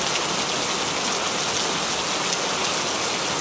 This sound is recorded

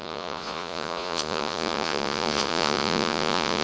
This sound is remade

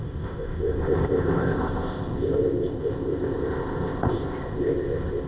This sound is remade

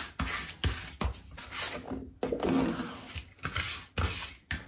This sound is recorded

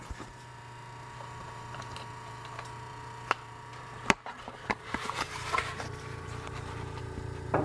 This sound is remade